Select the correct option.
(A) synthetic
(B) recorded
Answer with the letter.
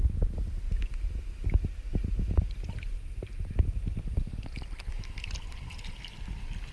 B